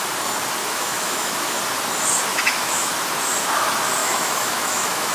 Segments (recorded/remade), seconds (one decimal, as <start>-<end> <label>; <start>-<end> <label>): 0.0-0.6 recorded; 0.6-1.6 remade; 1.6-2.3 recorded; 2.3-2.9 remade; 2.9-4.0 recorded; 4.0-5.1 remade